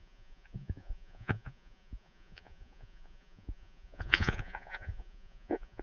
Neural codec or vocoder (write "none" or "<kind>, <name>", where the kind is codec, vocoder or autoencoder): vocoder, Vocos